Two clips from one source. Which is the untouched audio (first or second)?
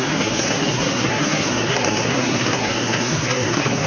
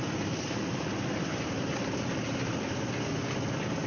second